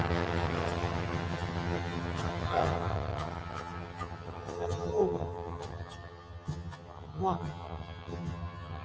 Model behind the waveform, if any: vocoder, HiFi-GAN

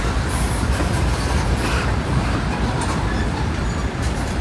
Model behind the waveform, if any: vocoder, BigVGAN v2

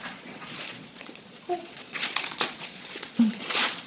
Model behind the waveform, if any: vocoder, Vocos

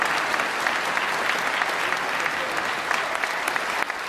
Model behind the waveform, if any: none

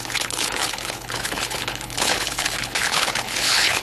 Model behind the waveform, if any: codec, HILCodec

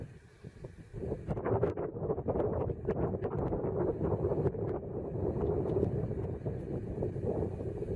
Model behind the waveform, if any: none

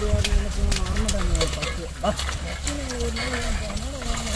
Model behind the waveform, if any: none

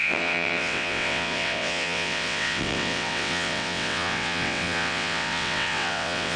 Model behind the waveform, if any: vocoder, WaveNeXt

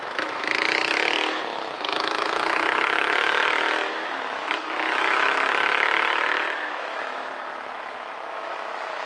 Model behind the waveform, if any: autoencoder, DAC-VAE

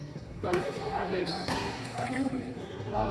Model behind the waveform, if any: codec, SNAC